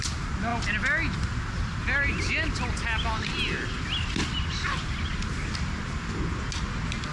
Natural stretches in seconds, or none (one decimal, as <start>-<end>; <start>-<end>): 0.0-7.1